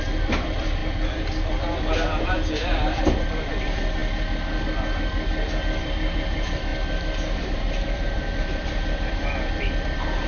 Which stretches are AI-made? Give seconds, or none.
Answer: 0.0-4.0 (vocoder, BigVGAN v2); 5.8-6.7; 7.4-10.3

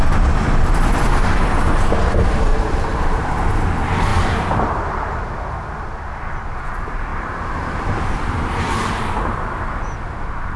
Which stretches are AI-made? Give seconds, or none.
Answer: 2.5-3.4 (vocoder, BigVGAN v2); 4.1-4.8; 7.1-8.9

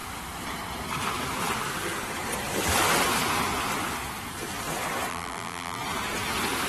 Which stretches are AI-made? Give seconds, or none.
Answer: 5.1-5.8 (vocoder, BigVGAN v2)

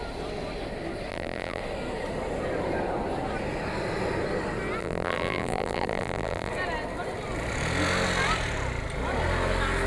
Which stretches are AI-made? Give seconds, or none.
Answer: 1.1-1.6 (vocoder, BigVGAN v2); 4.8-6.5

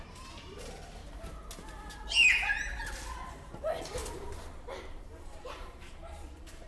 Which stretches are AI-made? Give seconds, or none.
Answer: 0.0-1.0 (vocoder, BigVGAN v2); 3.3-4.0; 4.9-6.7

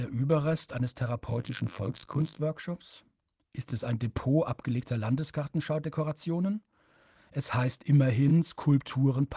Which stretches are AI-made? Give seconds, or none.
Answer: 1.3-2.4 (vocoder, BigVGAN v2)